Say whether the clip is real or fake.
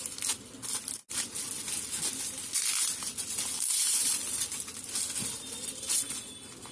real